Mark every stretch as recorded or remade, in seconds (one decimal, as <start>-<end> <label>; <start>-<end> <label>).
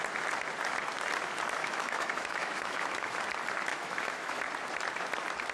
0.0-1.6 recorded; 1.6-3.2 remade; 3.2-3.7 recorded; 3.7-4.4 remade; 4.4-5.5 recorded